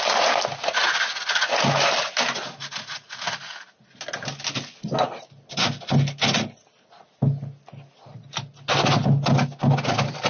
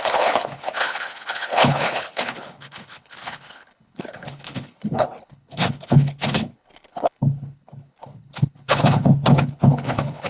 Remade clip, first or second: second